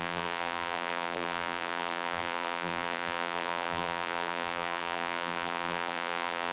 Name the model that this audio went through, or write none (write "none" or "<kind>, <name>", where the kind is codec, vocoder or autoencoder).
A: vocoder, BigVGAN v2